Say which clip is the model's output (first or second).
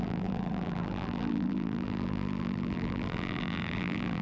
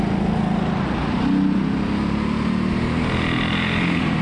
first